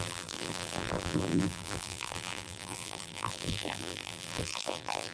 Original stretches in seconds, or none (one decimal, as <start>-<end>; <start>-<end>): none